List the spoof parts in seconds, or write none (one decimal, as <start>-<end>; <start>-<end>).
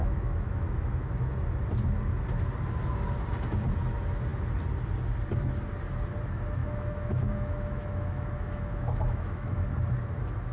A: 0.0-1.1; 6.6-9.7